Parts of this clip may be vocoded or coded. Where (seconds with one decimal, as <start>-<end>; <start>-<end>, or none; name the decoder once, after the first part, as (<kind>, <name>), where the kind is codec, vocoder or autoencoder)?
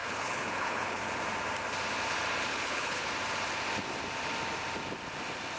0.0-1.0 (codec, HILCodec); 2.5-3.1